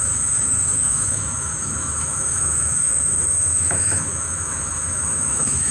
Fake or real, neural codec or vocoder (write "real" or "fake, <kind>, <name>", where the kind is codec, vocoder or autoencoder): fake, autoencoder, DAC-VAE